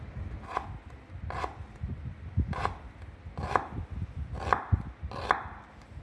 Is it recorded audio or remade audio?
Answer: recorded